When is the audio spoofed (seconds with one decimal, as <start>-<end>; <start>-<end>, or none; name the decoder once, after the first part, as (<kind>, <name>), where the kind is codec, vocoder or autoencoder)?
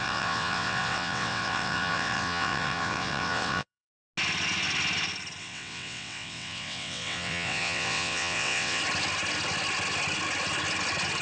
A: 0.0-3.9 (vocoder, WaveNeXt); 5.4-8.8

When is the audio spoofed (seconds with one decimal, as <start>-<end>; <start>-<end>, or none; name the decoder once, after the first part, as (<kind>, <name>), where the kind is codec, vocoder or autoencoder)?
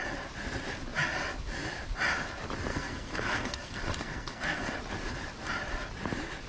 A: 2.7-4.7 (codec, SNAC)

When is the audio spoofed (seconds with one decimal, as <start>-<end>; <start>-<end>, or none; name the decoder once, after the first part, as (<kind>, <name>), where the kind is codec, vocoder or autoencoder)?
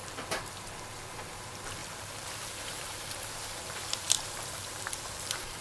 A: 0.0-0.5 (vocoder, BigVGAN v2); 1.8-5.6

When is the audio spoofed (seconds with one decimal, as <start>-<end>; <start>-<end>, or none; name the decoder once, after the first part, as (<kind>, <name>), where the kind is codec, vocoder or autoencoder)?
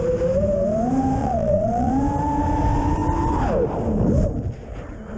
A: 1.2-1.9 (vocoder, Vocos)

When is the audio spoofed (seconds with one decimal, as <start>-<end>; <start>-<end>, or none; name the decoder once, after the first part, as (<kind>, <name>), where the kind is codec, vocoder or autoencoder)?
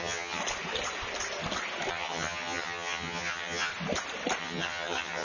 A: 0.0-0.4 (vocoder, HiFi-GAN); 1.9-3.7; 4.4-5.2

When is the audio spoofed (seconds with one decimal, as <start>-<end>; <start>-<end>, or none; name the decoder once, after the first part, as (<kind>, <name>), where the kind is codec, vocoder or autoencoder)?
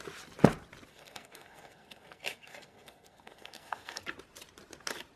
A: 0.9-4.0 (codec, SNAC)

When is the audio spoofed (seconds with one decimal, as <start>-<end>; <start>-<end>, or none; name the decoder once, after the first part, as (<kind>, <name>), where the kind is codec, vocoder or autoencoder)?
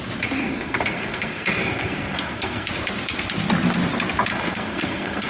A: 0.4-2.7 (codec, SNAC); 4.3-5.3